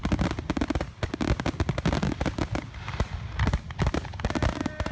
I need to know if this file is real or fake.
real